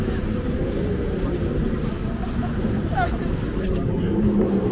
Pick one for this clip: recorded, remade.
remade